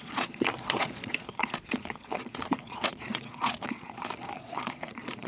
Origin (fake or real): fake